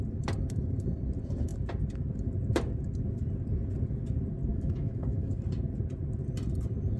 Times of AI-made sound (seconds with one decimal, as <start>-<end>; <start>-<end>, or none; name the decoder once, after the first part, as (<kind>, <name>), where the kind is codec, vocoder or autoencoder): 4.5-5.3 (autoencoder, DAC-VAE)